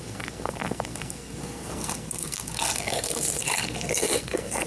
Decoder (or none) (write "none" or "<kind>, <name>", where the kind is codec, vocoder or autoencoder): codec, SNAC